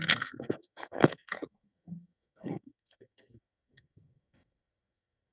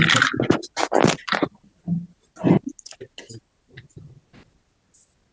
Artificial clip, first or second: first